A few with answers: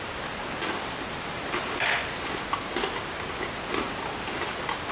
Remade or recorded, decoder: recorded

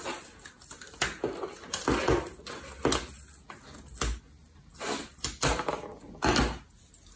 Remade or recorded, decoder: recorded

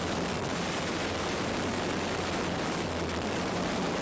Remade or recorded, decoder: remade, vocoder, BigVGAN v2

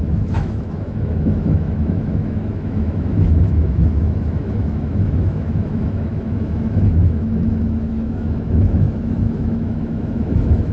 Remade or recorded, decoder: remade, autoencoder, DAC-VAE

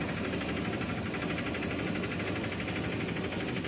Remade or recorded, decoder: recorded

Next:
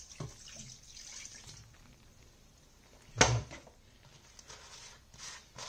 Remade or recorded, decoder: recorded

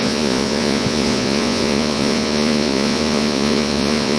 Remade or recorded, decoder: remade, vocoder, Vocos